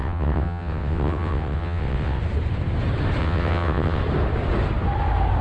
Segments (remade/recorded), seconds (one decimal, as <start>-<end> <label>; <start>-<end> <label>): 0.0-2.2 remade; 2.2-3.2 recorded; 3.2-4.0 remade; 4.0-5.4 recorded